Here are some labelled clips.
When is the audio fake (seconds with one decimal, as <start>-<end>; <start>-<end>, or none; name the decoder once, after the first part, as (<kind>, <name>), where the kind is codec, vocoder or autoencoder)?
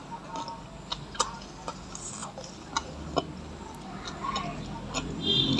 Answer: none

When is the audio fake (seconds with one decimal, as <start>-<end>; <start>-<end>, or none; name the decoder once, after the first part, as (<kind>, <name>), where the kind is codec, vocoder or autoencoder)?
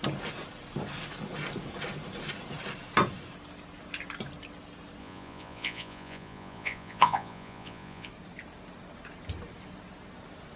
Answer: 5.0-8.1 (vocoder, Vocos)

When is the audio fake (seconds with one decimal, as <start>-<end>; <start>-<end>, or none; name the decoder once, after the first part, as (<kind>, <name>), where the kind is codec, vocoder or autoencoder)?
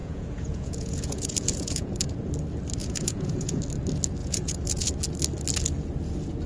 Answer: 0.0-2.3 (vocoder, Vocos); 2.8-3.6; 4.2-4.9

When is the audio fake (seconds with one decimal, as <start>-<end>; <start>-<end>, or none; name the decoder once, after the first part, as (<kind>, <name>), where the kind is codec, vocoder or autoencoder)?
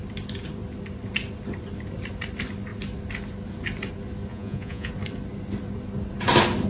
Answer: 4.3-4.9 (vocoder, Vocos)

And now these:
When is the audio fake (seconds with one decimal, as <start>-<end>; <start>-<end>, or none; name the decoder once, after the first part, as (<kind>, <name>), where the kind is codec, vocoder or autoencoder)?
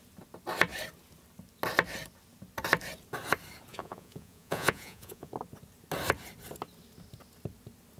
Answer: 3.7-5.3 (vocoder, Vocos)